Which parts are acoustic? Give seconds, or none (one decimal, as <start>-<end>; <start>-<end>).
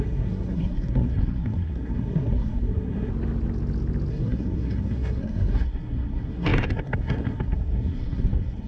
3.1-4.1